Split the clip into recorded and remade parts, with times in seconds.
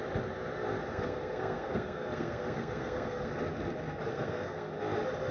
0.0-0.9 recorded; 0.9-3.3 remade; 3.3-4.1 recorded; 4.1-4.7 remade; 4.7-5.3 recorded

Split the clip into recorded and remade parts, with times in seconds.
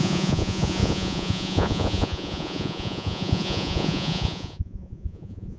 0.0-5.6 remade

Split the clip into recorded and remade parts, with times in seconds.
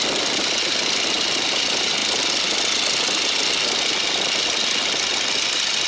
0.0-5.9 recorded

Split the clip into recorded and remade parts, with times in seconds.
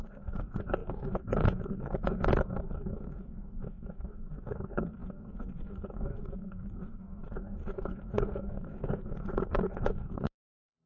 0.0-10.9 remade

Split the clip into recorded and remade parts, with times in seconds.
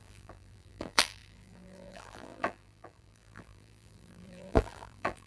0.0-5.3 remade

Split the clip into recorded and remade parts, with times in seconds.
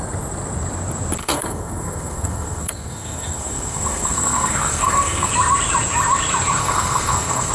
0.0-1.2 recorded; 1.2-5.3 remade; 5.3-6.6 recorded; 6.6-7.5 remade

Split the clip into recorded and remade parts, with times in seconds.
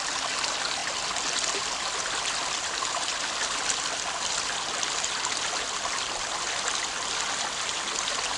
0.0-8.4 recorded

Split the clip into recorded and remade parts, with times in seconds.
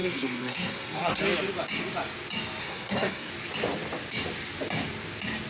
0.0-1.2 remade; 1.2-2.6 recorded; 2.6-3.3 remade; 3.3-5.5 recorded